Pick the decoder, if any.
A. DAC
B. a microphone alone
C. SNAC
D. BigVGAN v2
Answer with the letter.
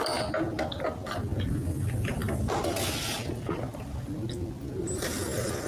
B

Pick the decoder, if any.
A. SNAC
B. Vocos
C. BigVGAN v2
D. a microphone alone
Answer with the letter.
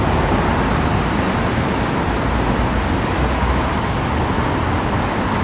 D